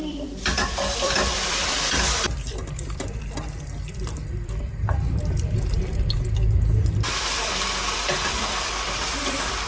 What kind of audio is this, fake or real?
fake